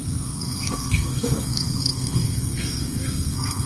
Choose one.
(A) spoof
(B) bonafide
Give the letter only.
A